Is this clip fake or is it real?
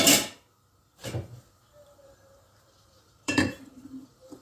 fake